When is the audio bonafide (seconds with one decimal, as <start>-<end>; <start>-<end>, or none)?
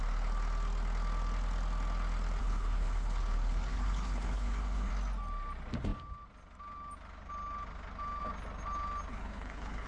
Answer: 0.0-2.4; 4.9-9.1